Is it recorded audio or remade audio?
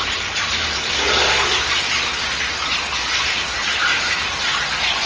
recorded